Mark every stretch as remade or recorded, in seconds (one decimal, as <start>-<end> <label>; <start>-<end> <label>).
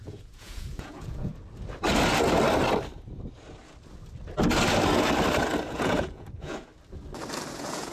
0.0-1.3 remade; 1.3-5.7 recorded; 5.7-6.7 remade; 6.7-7.5 recorded; 7.5-7.9 remade